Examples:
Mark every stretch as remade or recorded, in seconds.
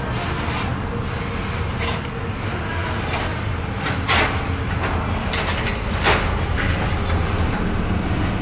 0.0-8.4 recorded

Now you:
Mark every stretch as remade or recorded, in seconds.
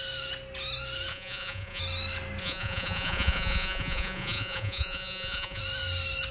0.0-1.1 recorded; 1.1-1.8 remade; 1.8-2.4 recorded; 2.4-5.6 remade; 5.6-6.3 recorded